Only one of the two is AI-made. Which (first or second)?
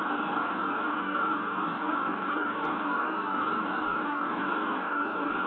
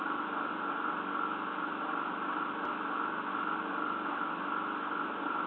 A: first